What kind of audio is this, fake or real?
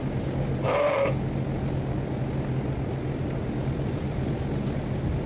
real